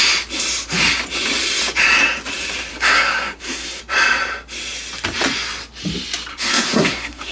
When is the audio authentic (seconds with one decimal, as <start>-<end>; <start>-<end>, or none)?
0.0-2.7; 3.8-6.3